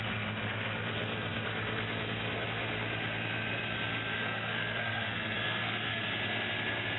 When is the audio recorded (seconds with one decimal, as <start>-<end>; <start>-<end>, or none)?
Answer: 0.0-4.1; 6.0-7.0